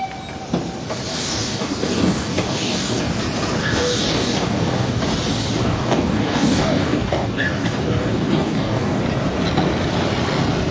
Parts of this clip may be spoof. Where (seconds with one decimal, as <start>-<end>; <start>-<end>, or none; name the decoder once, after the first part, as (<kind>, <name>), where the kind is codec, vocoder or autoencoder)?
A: 1.1-3.1 (codec, DAC); 3.6-5.0; 5.6-9.0